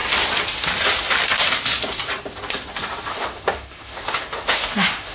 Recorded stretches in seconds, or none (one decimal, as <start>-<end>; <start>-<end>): 0.0-3.1

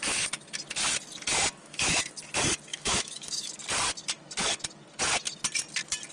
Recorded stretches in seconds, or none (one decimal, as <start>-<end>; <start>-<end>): 0.0-1.6; 2.1-2.7; 3.5-6.1

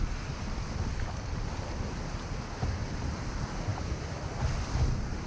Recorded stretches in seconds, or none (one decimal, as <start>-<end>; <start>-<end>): 0.0-0.9; 1.5-5.3

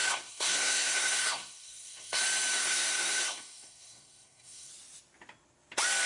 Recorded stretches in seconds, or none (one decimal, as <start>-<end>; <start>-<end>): 2.2-2.6; 4.7-6.1

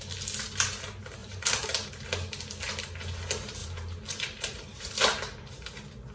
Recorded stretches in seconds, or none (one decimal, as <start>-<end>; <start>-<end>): 0.0-1.2; 1.9-3.6; 5.0-6.1